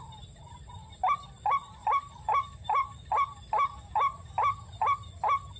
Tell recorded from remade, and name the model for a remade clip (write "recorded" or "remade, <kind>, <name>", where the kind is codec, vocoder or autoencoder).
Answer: recorded